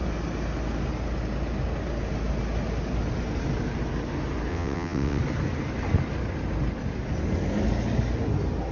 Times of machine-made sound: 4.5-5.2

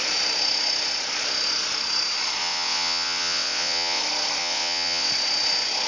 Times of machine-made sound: 2.4-4.0; 4.4-5.1

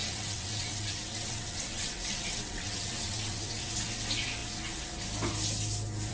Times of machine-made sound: 0.0-3.7

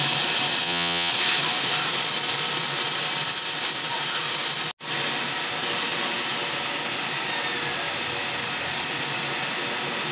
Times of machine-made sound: 0.6-1.1

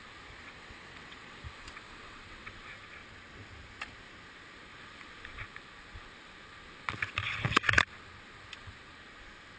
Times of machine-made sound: 0.4-2.6

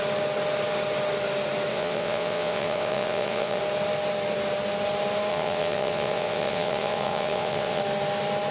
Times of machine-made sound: 1.7-3.6; 5.3-7.8

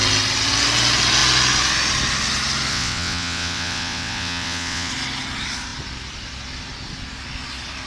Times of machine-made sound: 2.7-4.9